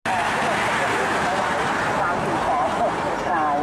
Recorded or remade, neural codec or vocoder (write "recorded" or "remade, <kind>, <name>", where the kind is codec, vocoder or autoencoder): recorded